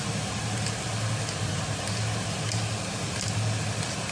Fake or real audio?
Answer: real